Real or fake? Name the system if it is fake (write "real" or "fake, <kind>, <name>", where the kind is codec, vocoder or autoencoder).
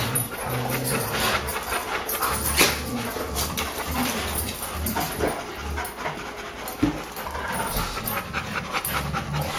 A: real